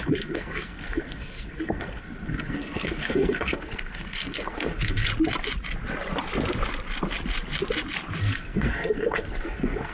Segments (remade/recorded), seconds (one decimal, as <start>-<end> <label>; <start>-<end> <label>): 0.0-5.1 remade; 5.1-8.2 recorded; 8.2-9.9 remade